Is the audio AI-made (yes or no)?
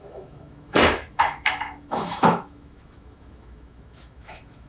yes